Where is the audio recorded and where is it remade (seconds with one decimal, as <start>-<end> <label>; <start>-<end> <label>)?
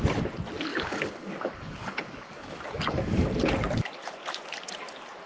0.0-0.7 recorded; 0.7-3.3 remade; 3.3-5.3 recorded